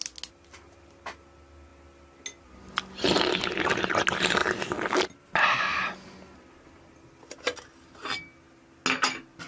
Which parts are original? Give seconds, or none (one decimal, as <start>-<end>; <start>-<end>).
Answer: 0.0-9.5